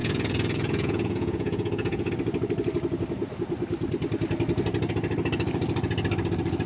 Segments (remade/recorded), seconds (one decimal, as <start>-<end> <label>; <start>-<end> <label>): 0.0-2.1 remade; 2.1-6.7 recorded